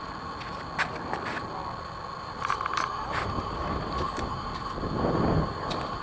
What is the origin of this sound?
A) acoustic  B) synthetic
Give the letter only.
A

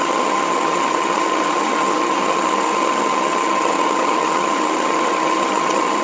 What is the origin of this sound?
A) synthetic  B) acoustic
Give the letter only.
A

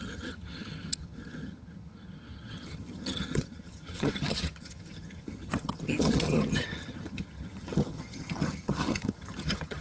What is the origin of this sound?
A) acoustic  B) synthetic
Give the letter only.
B